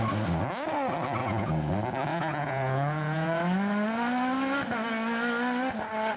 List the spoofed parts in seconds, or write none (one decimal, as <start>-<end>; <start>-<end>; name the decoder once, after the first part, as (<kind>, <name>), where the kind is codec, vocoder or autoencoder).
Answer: 1.2-1.7 (vocoder, Vocos); 2.1-3.4